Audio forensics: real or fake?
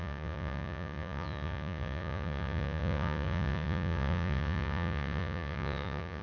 fake